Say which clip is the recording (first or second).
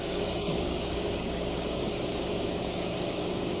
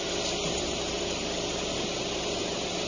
second